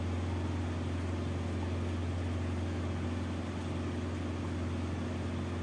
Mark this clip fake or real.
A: real